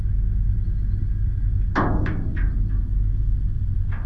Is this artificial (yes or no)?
no